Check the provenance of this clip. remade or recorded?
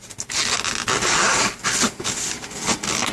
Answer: recorded